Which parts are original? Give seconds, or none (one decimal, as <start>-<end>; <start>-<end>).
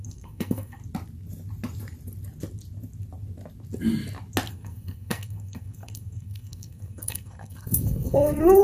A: 0.8-4.5